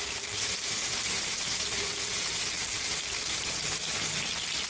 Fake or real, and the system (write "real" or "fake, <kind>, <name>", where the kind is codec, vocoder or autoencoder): fake, vocoder, BigVGAN v2